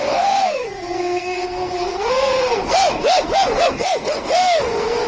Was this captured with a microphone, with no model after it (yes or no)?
no